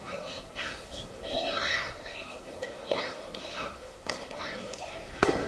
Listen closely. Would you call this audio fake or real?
fake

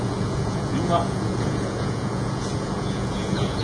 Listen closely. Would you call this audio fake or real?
fake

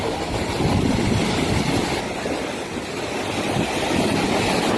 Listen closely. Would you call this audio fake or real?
real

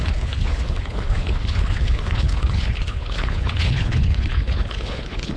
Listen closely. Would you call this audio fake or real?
fake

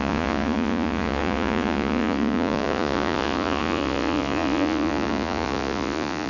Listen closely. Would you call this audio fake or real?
fake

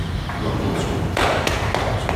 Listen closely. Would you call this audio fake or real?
real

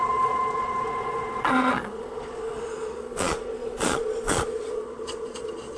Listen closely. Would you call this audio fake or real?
fake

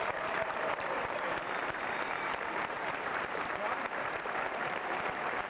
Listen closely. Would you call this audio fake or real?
fake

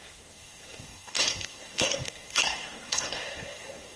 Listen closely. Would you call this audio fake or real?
fake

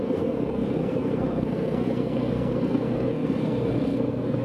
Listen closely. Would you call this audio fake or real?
fake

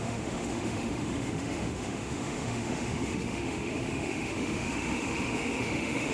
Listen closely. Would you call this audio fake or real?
fake